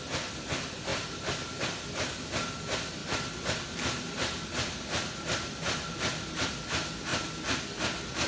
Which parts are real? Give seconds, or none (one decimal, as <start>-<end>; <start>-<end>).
0.0-8.3